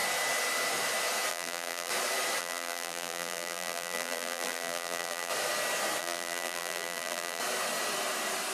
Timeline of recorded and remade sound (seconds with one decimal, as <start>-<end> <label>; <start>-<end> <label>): 0.0-1.3 recorded; 1.3-1.9 remade; 1.9-2.4 recorded; 2.4-5.3 remade; 5.3-6.0 recorded; 6.0-7.4 remade; 7.4-8.5 recorded